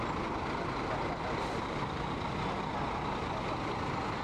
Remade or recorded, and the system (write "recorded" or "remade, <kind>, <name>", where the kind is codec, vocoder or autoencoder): recorded